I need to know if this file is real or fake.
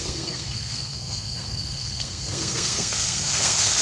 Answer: fake